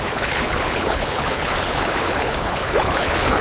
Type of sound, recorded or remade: remade